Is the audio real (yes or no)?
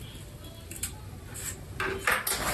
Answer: yes